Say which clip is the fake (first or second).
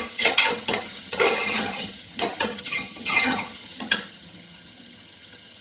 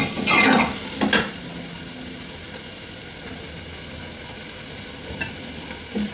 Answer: first